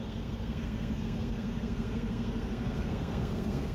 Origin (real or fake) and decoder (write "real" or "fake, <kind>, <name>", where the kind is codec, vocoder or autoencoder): fake, codec, SNAC